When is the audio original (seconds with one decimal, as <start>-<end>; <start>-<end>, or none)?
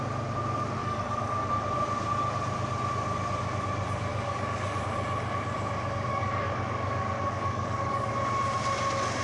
0.0-0.8; 1.5-4.1; 4.8-6.1; 8.1-9.2